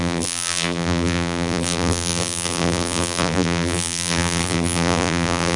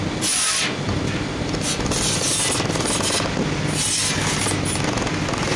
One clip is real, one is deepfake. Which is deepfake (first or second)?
first